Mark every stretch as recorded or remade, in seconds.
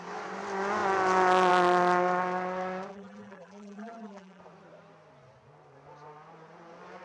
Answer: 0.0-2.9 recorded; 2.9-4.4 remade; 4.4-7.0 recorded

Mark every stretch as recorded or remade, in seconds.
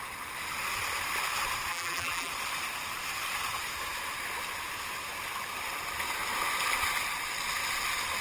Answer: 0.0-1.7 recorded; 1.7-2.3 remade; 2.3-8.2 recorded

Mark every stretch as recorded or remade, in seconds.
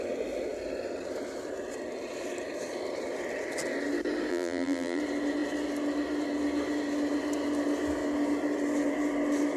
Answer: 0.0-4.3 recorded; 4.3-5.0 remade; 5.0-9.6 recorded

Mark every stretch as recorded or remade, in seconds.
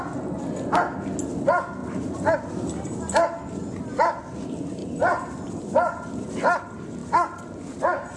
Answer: 0.0-1.8 recorded; 1.8-2.5 remade; 2.5-4.8 recorded; 4.8-6.3 remade; 6.3-7.0 recorded; 7.0-8.2 remade